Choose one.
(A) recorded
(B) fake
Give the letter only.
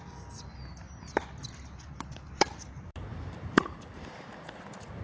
A